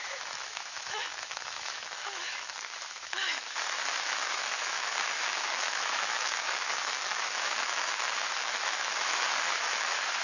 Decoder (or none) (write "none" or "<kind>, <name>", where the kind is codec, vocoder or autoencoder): autoencoder, DAC-VAE